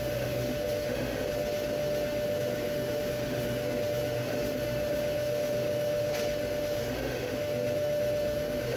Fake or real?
fake